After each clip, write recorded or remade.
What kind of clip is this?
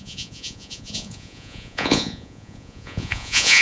remade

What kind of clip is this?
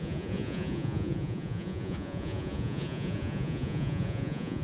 remade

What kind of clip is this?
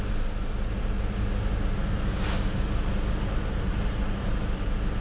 recorded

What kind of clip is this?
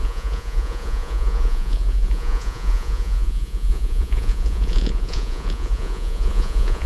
remade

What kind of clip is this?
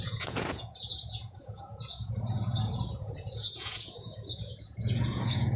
remade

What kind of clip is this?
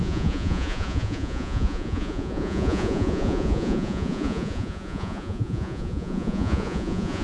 remade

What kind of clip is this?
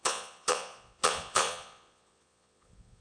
remade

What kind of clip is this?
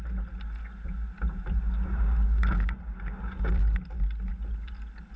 recorded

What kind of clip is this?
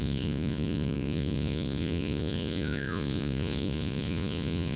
remade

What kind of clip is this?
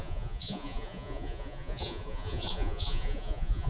remade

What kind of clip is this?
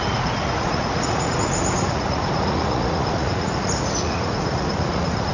remade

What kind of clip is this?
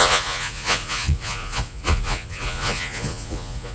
remade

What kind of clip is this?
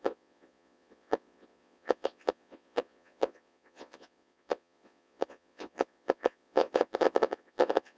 remade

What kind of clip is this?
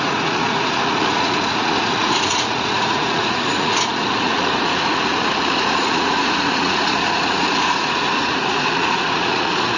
remade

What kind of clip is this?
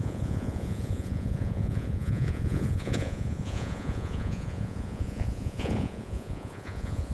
remade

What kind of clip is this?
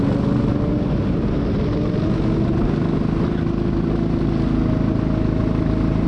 recorded